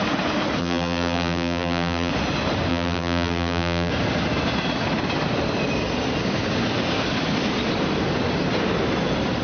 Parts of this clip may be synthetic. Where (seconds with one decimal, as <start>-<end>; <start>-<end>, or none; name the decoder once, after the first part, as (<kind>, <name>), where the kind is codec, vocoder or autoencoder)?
0.6-2.1 (vocoder, BigVGAN v2); 2.7-3.9